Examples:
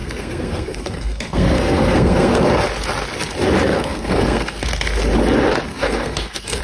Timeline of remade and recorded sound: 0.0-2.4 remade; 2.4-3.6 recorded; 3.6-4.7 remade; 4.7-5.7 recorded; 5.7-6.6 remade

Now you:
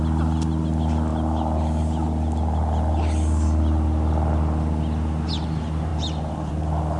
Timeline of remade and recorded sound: 0.0-7.0 recorded

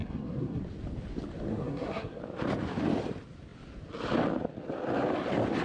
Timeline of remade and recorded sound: 0.0-0.6 remade; 0.6-1.5 recorded; 1.5-2.2 remade; 2.2-5.6 recorded

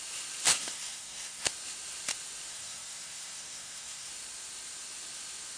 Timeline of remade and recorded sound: 0.0-0.5 recorded; 0.5-1.5 remade; 1.5-2.5 recorded; 2.5-4.1 remade; 4.1-5.6 recorded

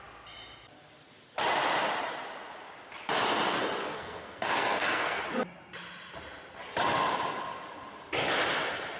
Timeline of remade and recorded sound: 0.0-3.8 recorded; 3.8-5.2 remade; 5.2-9.0 recorded